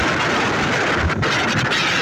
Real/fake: real